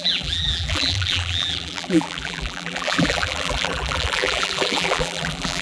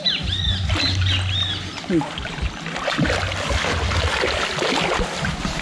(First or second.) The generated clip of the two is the first